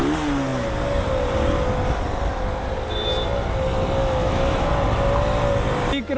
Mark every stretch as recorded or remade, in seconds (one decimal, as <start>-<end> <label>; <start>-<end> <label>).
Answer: 0.0-4.0 recorded; 4.0-4.7 remade; 4.7-6.2 recorded